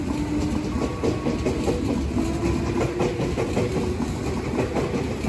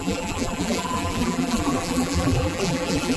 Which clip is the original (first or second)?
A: first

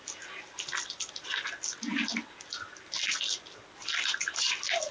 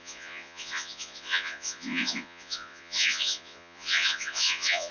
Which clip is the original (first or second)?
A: first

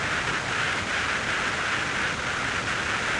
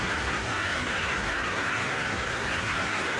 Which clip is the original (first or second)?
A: first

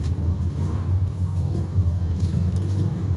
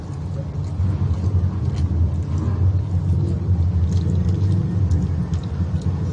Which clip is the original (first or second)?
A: second